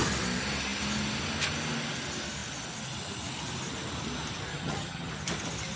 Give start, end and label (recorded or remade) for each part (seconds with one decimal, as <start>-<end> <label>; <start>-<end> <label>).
0.0-4.5 recorded; 4.5-5.1 remade; 5.1-5.8 recorded